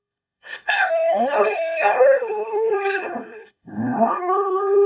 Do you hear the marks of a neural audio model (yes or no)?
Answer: yes